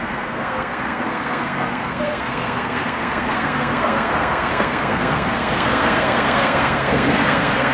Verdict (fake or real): fake